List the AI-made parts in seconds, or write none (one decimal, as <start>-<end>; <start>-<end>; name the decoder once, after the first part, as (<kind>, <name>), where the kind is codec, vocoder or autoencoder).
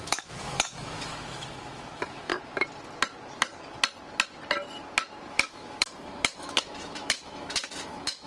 0.0-2.3 (autoencoder, DAC-VAE); 5.3-8.3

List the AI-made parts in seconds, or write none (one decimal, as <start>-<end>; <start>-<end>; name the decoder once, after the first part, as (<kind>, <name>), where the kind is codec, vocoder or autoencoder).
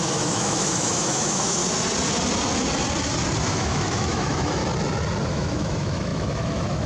0.0-1.6 (autoencoder, DAC-VAE); 3.5-4.6; 5.3-6.9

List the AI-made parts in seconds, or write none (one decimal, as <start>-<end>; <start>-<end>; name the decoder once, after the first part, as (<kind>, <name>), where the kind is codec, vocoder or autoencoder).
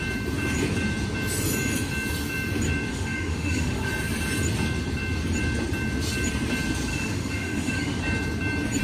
2.9-3.9 (autoencoder, DAC-VAE); 6.9-8.0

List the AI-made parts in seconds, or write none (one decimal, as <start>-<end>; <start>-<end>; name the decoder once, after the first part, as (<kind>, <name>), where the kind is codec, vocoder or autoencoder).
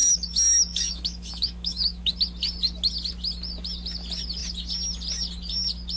0.0-2.1 (autoencoder, DAC-VAE)